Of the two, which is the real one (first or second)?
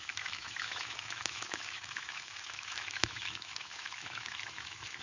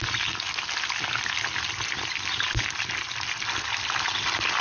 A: second